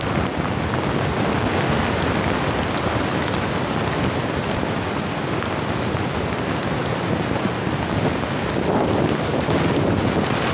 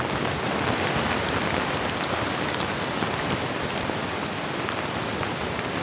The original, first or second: first